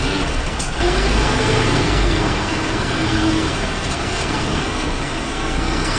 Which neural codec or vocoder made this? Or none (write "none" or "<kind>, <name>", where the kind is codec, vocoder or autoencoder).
codec, SNAC